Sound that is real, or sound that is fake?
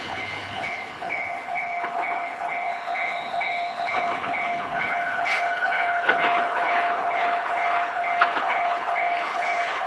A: fake